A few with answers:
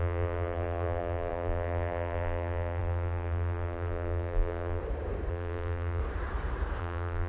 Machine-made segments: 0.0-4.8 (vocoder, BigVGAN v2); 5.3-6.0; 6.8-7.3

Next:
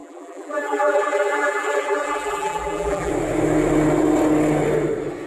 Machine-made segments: 0.0-3.1 (vocoder, BigVGAN v2)

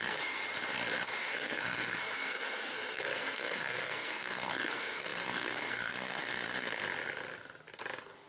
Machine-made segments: 0.0-0.4 (codec, SNAC); 1.2-6.8

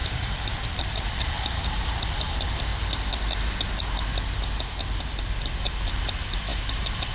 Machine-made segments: 0.0-2.7 (vocoder, BigVGAN v2); 5.4-7.1

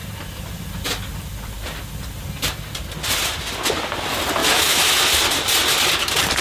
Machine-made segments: 4.4-4.9 (autoencoder, DAC-VAE)

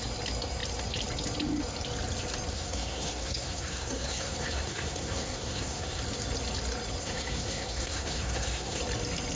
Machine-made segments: 2.5-6.0 (codec, SNAC); 7.0-8.8

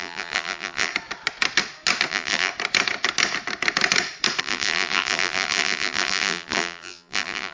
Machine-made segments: 0.0-0.9 (vocoder, BigVGAN v2); 2.1-2.5; 4.4-7.5

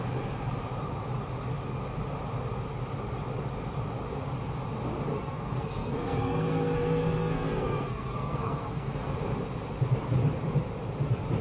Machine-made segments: 5.1-9.1 (codec, SNAC)